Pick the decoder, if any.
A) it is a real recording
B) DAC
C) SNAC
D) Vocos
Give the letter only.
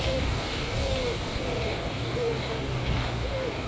B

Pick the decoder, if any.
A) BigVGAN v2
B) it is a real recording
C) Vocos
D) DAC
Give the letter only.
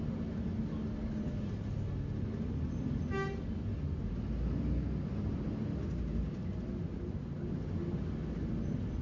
B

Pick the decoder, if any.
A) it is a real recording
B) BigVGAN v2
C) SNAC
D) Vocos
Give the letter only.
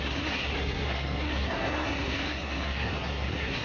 C